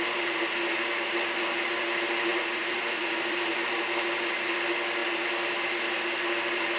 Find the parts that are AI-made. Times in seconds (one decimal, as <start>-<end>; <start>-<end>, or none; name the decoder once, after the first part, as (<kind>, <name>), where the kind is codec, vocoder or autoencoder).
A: 2.3-3.5 (vocoder, BigVGAN v2)